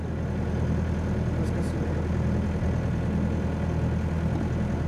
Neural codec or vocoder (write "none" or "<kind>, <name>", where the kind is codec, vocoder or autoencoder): none